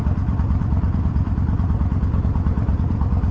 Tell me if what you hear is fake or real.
fake